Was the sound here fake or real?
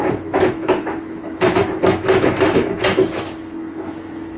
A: fake